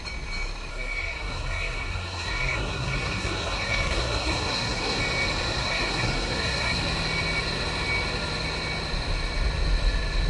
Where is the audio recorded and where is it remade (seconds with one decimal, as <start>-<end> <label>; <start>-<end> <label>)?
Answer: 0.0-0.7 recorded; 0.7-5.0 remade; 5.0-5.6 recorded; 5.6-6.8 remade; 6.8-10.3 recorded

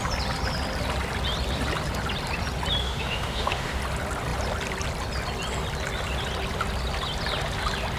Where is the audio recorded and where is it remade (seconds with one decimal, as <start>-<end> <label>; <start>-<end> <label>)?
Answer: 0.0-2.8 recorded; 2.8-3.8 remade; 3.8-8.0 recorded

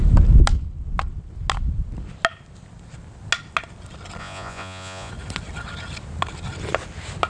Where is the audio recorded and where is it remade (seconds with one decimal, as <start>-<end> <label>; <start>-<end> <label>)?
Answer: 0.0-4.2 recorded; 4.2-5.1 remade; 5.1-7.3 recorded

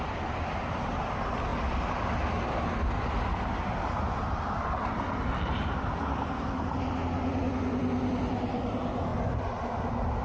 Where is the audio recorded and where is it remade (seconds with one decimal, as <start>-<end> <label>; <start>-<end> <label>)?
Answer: 0.0-10.2 recorded